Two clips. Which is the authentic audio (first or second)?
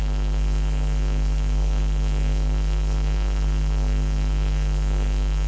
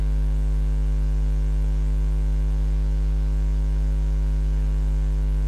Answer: second